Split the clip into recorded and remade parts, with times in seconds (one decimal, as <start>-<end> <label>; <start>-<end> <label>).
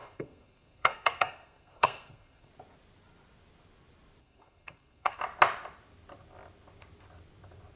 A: 0.0-2.5 remade; 2.5-4.2 recorded; 4.2-5.2 remade; 5.2-7.8 recorded